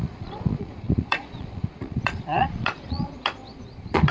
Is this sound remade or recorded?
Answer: remade